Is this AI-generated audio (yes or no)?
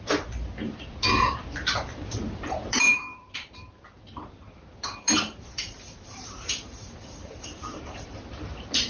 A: yes